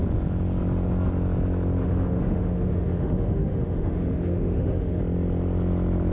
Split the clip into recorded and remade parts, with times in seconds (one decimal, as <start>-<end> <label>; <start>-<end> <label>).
0.0-1.8 recorded; 1.8-5.0 remade; 5.0-6.1 recorded